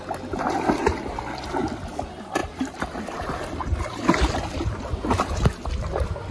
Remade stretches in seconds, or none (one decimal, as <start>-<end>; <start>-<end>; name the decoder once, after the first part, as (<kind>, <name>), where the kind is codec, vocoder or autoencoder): 2.4-6.3 (vocoder, BigVGAN v2)